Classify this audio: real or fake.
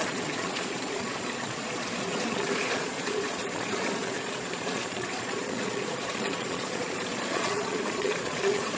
fake